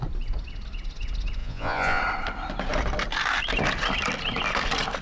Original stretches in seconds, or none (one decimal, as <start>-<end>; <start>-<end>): 0.0-1.4; 2.0-5.0